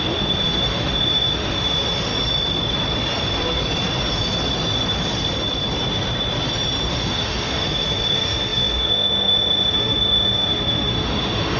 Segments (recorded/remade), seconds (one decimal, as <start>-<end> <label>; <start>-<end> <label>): 0.0-2.1 remade; 2.1-6.9 recorded; 6.9-11.6 remade